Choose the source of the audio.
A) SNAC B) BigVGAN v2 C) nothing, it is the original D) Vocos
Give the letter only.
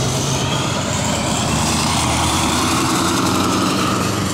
B